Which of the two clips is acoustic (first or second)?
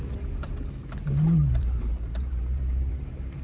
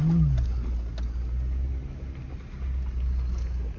second